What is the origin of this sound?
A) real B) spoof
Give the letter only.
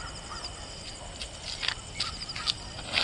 A